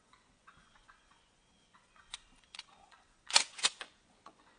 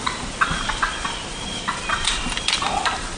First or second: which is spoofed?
first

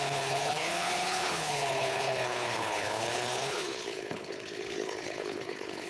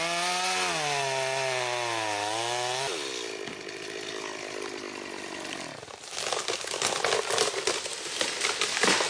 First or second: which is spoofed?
first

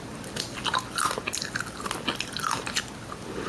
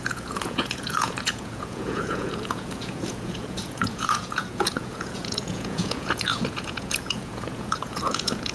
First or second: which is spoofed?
second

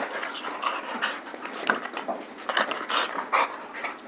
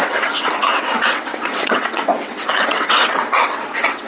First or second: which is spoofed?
second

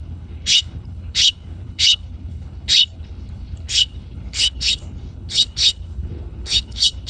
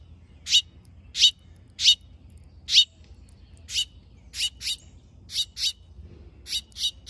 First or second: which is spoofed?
first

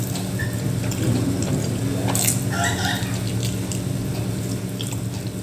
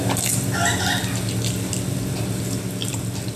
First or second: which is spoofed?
second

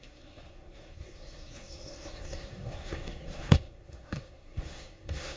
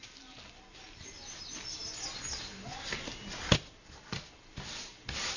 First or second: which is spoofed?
first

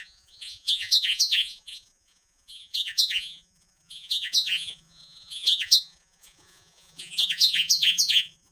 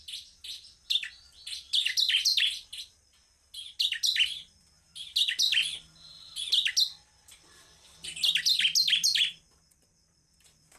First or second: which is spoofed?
first